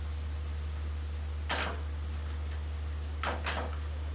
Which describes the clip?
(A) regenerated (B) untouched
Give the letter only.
B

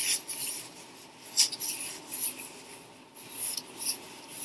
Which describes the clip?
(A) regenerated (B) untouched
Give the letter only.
B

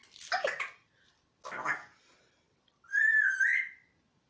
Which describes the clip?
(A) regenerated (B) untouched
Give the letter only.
B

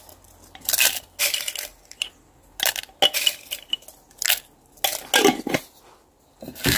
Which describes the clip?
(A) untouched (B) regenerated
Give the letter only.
A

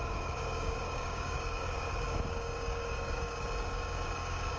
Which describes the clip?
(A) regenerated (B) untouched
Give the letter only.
A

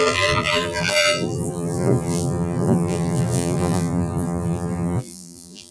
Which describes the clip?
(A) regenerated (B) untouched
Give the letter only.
A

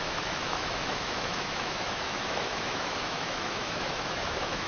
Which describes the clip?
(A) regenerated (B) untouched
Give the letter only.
A